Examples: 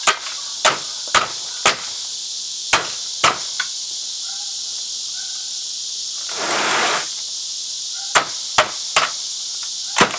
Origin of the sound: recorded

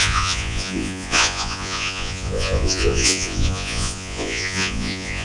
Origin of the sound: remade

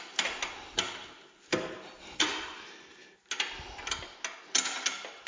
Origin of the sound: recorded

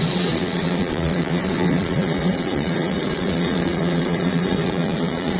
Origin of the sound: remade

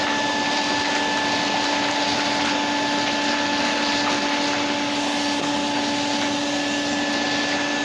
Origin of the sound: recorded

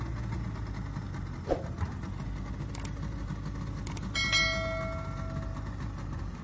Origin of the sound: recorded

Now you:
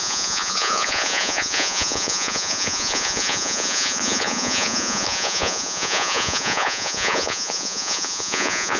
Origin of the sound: remade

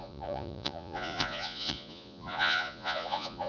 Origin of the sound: remade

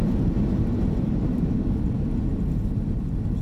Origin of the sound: recorded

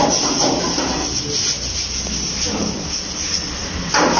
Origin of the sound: recorded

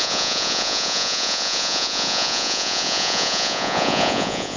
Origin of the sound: remade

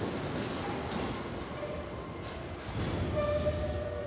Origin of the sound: recorded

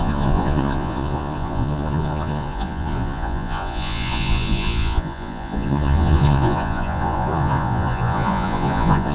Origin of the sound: remade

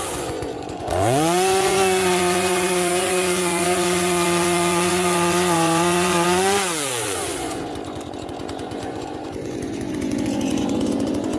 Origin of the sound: remade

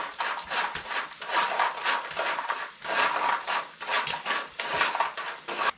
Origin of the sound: recorded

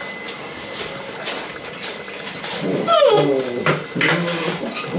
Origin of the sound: recorded